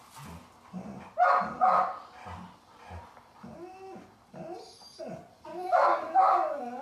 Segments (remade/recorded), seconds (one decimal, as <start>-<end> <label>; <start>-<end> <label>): 0.0-5.5 recorded; 5.5-6.8 remade